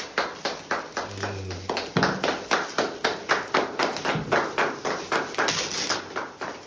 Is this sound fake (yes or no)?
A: no